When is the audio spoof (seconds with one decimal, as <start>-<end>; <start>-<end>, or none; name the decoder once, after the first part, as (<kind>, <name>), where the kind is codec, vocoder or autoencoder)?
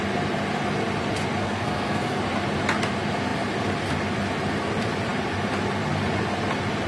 1.4-2.2 (codec, SNAC)